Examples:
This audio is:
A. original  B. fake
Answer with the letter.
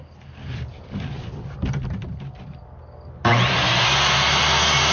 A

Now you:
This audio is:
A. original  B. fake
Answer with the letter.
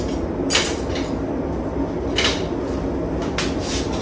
A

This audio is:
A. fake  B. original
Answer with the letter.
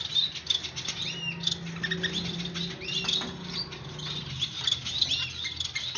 B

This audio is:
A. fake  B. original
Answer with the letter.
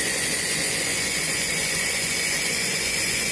A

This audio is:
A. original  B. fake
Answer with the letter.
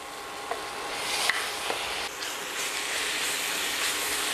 A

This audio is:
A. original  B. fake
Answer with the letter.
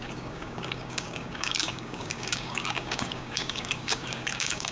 B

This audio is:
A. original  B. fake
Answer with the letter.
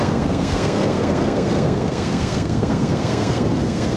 B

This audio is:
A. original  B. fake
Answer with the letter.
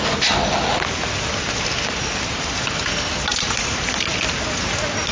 A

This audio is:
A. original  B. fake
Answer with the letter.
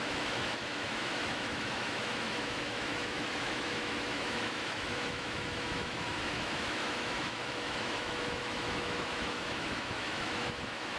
B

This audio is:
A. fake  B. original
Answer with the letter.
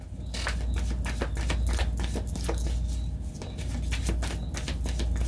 B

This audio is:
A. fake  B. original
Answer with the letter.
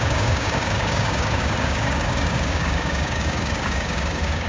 A